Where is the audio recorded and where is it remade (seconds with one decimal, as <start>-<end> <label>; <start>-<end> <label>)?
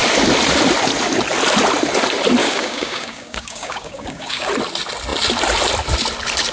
0.0-2.4 recorded; 2.4-4.5 remade; 4.5-6.5 recorded